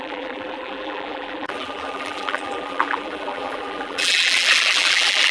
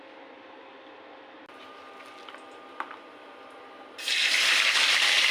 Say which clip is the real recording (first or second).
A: second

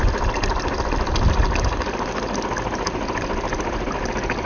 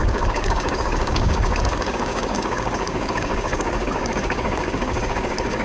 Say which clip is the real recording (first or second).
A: first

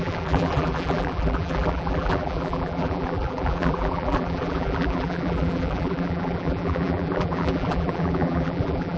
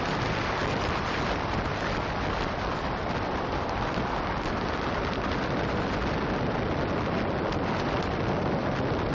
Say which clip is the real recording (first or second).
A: second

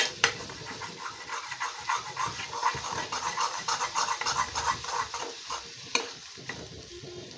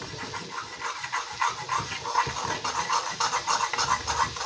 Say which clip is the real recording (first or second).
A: second